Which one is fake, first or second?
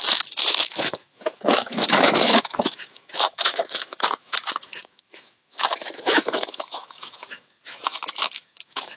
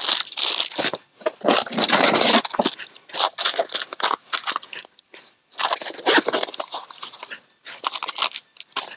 first